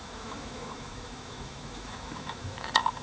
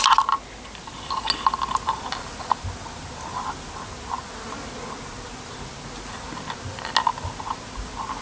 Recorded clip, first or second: second